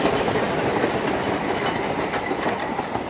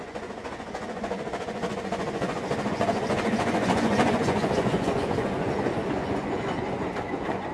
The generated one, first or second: second